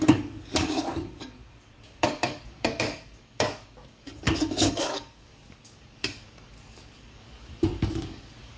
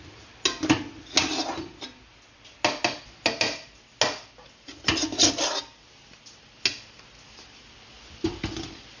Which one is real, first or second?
second